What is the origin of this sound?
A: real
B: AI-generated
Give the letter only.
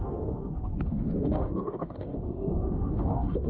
B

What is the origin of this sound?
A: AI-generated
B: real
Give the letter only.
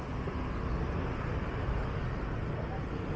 B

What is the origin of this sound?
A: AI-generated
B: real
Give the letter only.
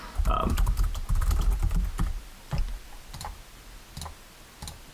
B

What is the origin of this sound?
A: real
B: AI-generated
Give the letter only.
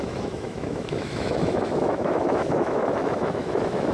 B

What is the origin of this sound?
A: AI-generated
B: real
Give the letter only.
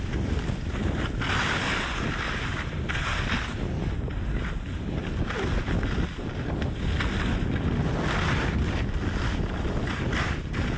B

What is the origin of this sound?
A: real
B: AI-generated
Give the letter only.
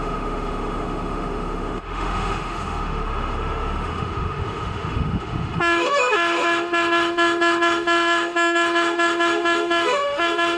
B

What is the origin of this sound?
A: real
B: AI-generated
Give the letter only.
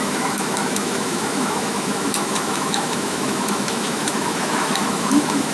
B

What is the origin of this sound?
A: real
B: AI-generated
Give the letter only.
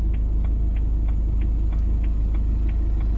A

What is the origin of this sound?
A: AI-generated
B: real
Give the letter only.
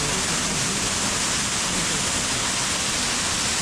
B